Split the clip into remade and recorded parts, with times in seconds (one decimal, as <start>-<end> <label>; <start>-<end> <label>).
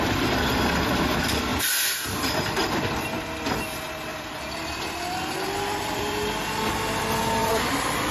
0.0-1.5 recorded; 1.5-3.6 remade; 3.6-4.1 recorded; 4.1-6.5 remade; 6.5-7.4 recorded; 7.4-8.1 remade